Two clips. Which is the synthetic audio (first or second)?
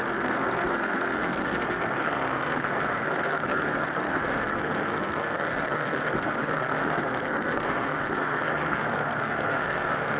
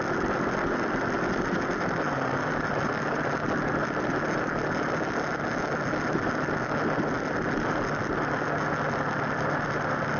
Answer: first